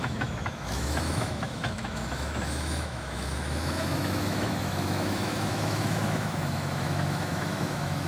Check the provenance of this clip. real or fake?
fake